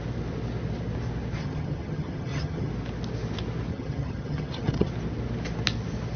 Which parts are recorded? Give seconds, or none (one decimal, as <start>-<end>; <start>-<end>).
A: 0.0-1.4; 2.7-3.7; 4.9-6.2